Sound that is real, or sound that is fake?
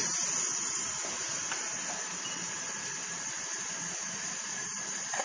real